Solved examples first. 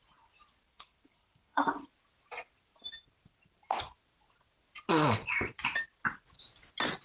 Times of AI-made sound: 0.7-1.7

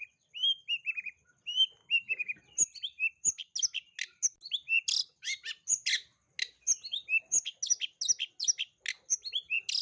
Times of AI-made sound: 1.8-2.4

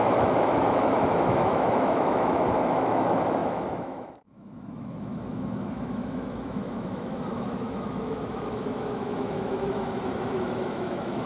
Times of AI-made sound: 0.0-11.3

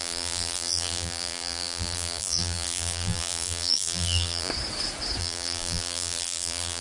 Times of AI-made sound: 0.0-4.5; 5.2-6.8

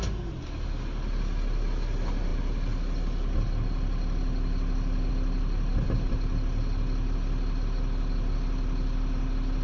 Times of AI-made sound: none